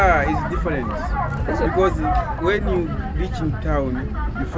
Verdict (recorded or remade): recorded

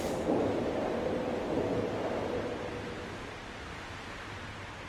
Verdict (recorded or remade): recorded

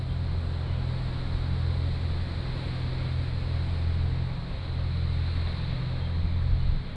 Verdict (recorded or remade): recorded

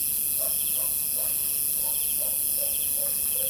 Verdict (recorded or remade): recorded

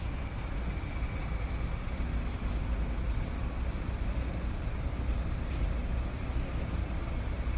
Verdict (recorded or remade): recorded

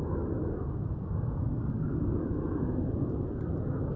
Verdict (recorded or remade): recorded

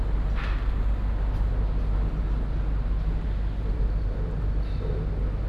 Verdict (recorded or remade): recorded